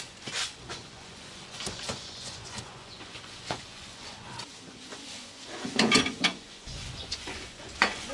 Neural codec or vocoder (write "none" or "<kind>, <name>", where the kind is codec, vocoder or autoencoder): vocoder, Vocos